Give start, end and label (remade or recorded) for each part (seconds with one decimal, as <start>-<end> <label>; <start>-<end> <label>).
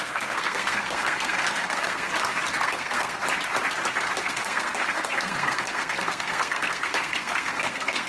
0.0-2.1 remade; 2.1-2.6 recorded; 2.6-3.2 remade; 3.2-4.2 recorded; 4.2-8.1 remade